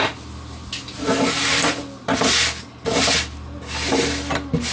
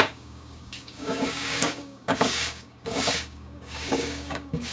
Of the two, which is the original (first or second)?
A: first